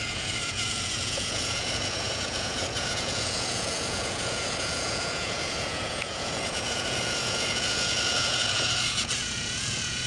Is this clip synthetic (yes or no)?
yes